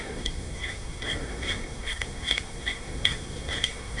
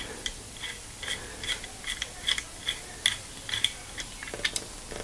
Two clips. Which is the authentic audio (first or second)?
second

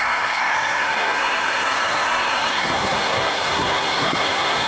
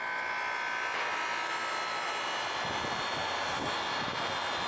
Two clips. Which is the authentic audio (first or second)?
second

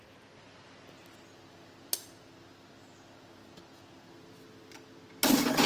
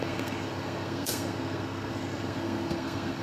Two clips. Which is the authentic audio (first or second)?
first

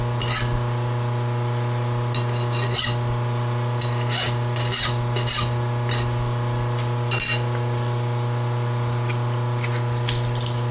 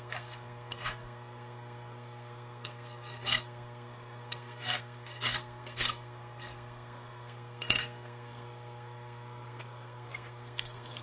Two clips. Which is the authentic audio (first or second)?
first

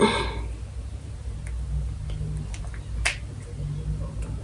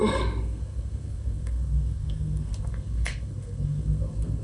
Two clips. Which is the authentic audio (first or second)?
first